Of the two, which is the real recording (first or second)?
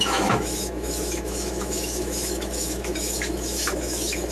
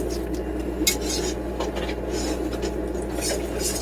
second